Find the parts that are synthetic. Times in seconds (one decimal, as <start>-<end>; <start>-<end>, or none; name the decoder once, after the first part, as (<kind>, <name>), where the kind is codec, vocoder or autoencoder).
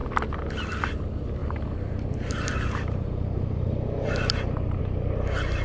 1.4-4.8 (vocoder, BigVGAN v2)